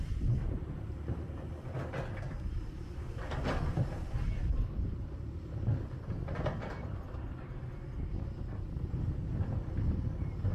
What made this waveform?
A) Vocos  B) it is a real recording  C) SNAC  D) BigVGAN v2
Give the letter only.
B